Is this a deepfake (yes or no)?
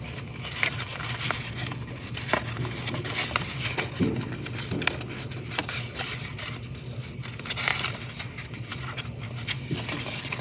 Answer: no